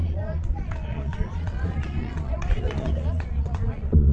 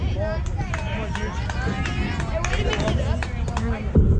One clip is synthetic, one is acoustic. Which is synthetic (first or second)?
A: first